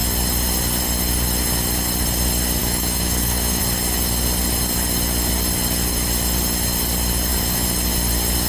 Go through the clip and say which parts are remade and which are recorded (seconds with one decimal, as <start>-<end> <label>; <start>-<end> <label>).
0.0-2.6 recorded; 2.6-3.6 remade; 3.6-8.5 recorded